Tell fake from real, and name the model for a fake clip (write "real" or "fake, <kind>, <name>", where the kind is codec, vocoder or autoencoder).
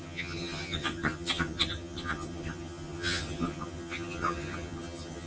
fake, vocoder, HiFi-GAN